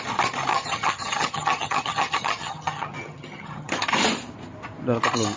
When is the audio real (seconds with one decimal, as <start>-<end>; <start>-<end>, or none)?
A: 0.0-0.5; 3.7-5.4